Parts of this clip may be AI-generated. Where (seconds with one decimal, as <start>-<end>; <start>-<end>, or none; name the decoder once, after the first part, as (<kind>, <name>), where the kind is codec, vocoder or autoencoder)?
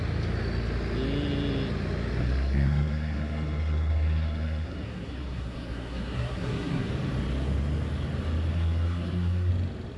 2.2-6.9 (codec, SNAC); 8.5-9.5